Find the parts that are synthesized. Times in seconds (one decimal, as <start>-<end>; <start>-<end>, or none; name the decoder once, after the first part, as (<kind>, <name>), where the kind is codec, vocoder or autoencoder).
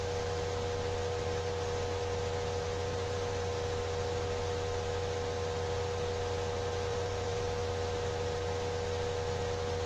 2.9-3.5 (vocoder, BigVGAN v2); 6.9-7.4